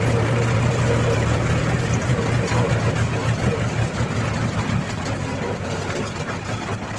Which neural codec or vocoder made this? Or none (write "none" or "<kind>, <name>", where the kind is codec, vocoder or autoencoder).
none